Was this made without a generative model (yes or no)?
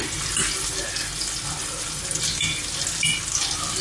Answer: yes